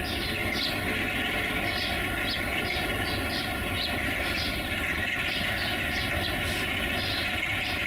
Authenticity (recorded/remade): recorded